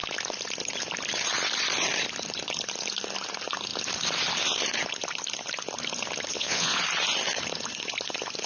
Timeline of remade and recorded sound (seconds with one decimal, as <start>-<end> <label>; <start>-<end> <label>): 0.0-6.3 recorded; 6.3-6.8 remade; 6.8-8.5 recorded